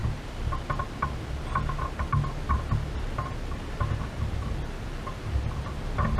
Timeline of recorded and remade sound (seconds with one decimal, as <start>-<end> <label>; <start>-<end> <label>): 0.0-6.2 recorded